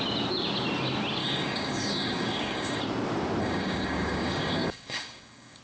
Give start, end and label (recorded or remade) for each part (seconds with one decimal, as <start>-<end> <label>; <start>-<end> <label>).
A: 0.0-1.2 recorded; 1.2-2.8 remade; 2.8-3.4 recorded; 3.4-5.6 remade

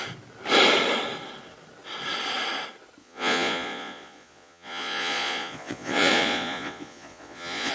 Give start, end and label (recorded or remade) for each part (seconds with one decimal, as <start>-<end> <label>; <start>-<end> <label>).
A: 0.0-3.0 recorded; 3.0-7.7 remade

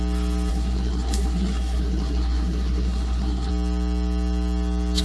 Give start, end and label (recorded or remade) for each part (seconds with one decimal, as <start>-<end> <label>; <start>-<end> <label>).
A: 0.0-0.5 recorded; 0.5-3.5 remade; 3.5-5.0 recorded